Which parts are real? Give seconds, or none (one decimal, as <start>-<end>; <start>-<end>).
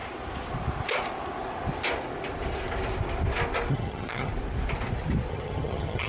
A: 0.0-3.7; 4.3-5.3